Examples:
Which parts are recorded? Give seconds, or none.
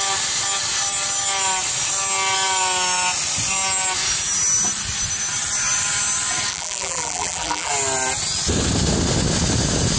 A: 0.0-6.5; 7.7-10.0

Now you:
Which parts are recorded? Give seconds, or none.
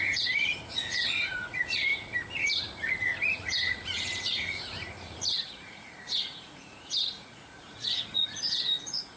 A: 1.9-3.3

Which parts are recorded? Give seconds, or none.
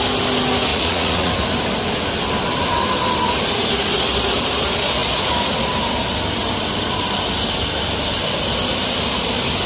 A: 0.0-0.7; 1.3-9.7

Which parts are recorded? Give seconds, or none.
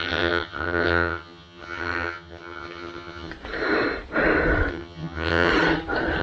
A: 3.3-4.7; 5.5-6.2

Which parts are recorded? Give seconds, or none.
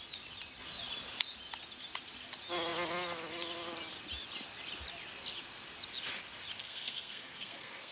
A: 0.0-6.6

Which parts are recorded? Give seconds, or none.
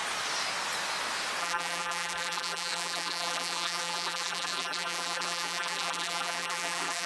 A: 0.0-1.4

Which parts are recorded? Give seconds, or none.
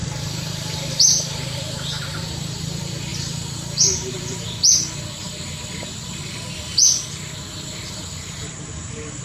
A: 3.1-8.3